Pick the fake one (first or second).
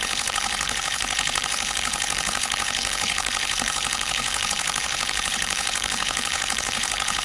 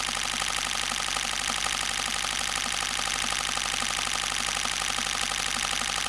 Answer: first